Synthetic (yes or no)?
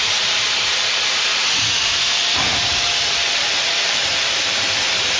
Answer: yes